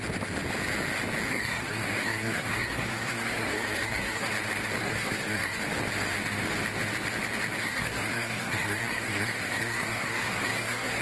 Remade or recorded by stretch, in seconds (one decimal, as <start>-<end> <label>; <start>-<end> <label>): 0.0-1.3 recorded; 1.3-4.3 remade; 4.3-4.8 recorded; 4.8-5.6 remade; 5.6-7.6 recorded; 7.6-11.0 remade